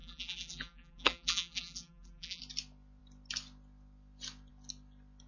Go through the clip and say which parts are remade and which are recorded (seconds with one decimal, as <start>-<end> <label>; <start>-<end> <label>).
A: 0.0-2.4 remade; 2.4-5.3 recorded